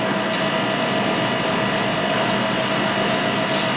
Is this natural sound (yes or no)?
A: yes